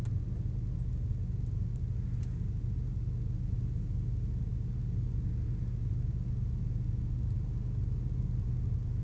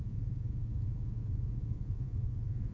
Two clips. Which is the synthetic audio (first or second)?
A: second